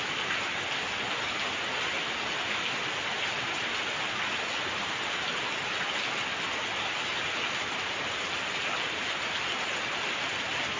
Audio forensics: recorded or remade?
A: recorded